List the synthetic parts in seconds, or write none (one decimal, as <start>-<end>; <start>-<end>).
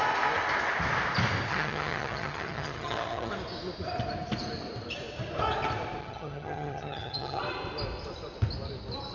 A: 1.5-3.3; 6.0-7.4